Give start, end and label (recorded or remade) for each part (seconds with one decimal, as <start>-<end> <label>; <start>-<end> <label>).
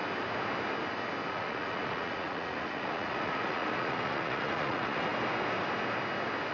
0.0-1.3 recorded; 1.3-5.1 remade; 5.1-6.5 recorded